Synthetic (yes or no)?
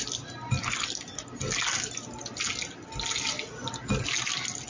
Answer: no